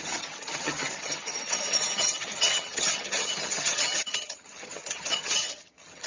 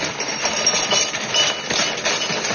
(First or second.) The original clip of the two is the second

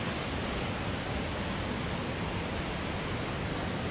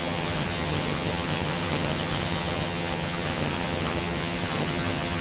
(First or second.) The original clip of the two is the first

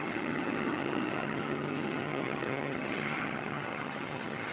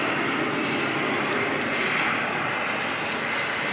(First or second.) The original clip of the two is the second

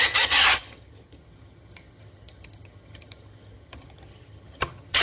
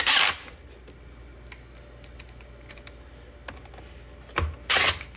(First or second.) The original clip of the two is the second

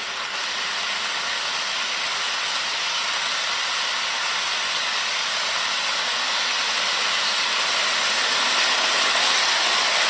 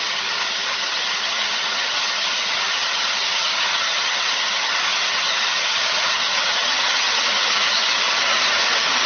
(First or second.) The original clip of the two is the first